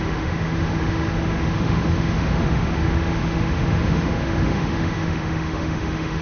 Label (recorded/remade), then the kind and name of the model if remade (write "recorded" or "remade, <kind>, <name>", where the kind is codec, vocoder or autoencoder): remade, autoencoder, DAC-VAE